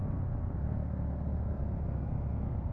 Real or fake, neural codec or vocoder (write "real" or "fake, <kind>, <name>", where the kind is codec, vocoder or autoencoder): real